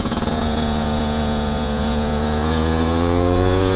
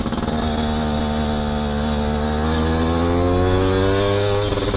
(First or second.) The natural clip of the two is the second